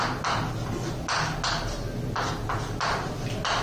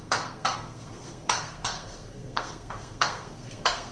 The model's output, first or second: second